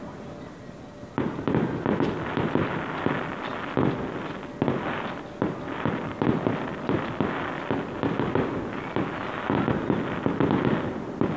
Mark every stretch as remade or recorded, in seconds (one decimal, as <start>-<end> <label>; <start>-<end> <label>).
0.0-11.4 recorded